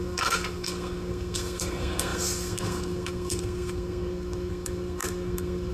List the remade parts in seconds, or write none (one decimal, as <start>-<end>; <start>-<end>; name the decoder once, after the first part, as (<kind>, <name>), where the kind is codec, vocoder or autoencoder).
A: 0.0-5.7 (codec, SNAC)